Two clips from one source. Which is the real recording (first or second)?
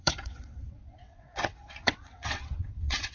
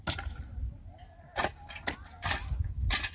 second